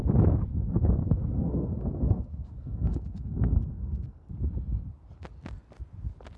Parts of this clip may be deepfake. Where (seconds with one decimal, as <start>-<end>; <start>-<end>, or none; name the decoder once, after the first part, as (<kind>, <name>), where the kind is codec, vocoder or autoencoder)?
0.5-4.3 (codec, SNAC)